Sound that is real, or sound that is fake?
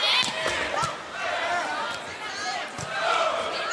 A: real